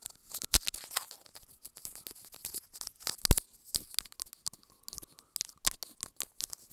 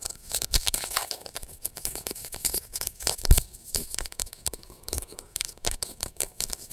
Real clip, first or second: first